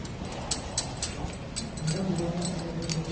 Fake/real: real